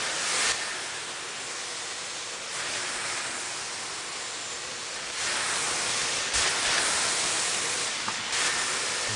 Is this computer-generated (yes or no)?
no